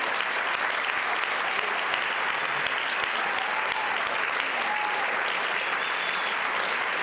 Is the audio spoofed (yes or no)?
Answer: no